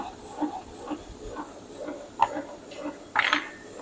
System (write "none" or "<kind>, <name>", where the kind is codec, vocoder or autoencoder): none